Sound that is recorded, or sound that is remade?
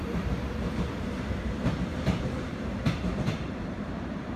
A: remade